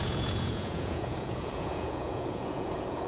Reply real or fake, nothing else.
fake